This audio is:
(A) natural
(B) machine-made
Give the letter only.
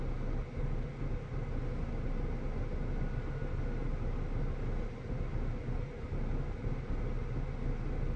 A